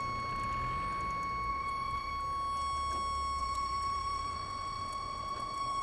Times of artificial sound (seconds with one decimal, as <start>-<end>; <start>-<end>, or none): 1.5-2.1; 3.4-5.8